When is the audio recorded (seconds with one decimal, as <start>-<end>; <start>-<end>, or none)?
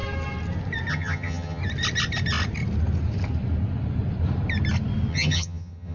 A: 0.0-0.9; 1.6-5.1